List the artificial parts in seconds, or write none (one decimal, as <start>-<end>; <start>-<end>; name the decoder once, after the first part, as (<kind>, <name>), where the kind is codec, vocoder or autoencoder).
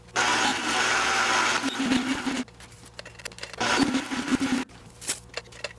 0.5-1.3 (vocoder, BigVGAN v2); 4.3-4.9